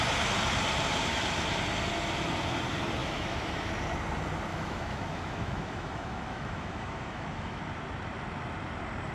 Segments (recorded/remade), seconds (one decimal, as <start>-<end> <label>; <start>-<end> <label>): 0.0-3.0 recorded; 3.0-3.7 remade; 3.7-4.5 recorded; 4.5-7.6 remade; 7.6-9.1 recorded